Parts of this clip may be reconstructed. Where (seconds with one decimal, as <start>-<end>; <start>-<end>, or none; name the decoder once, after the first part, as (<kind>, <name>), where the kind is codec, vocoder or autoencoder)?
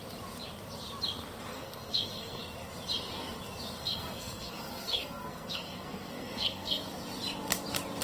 1.5-2.4 (codec, SNAC); 3.8-6.8